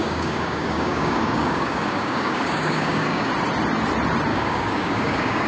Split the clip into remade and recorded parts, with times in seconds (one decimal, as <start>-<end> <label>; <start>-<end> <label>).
0.0-3.3 remade; 3.3-4.3 recorded; 4.3-5.5 remade